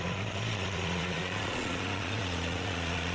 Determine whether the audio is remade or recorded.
remade